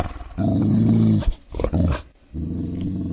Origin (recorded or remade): recorded